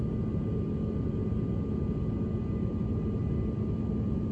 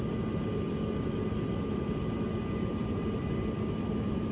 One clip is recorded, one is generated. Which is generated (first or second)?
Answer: second